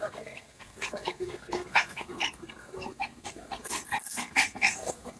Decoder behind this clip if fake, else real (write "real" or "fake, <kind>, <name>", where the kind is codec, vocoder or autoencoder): fake, codec, SNAC